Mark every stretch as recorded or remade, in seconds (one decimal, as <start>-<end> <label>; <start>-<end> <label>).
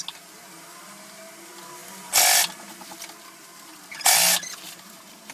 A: 0.0-5.3 recorded